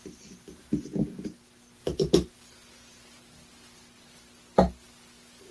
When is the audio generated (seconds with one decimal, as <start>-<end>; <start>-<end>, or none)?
none